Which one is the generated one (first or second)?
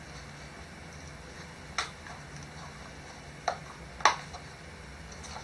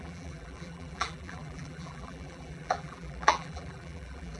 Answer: second